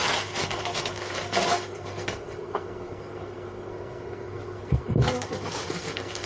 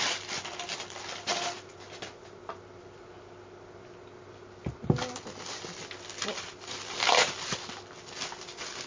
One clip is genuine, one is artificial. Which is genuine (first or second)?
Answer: second